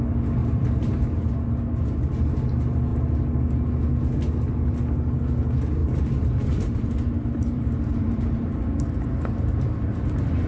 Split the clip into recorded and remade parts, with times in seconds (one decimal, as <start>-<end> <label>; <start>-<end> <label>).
0.0-0.4 recorded; 0.4-1.1 remade; 1.1-5.8 recorded; 5.8-8.8 remade; 8.8-10.5 recorded